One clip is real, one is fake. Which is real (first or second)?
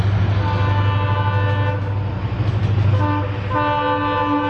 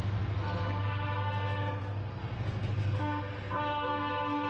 first